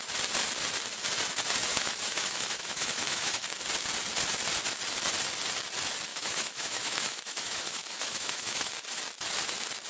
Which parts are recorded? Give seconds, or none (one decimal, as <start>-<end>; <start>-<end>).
0.0-1.7; 3.5-6.1; 8.7-9.9